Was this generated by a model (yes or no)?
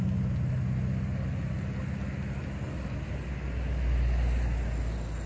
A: no